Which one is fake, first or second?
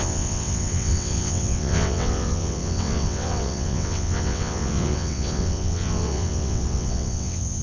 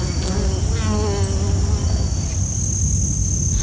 first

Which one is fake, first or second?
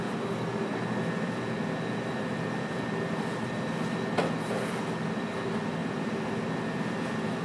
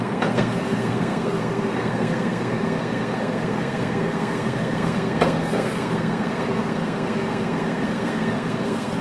second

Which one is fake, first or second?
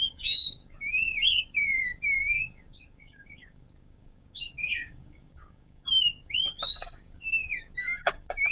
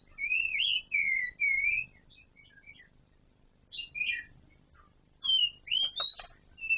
first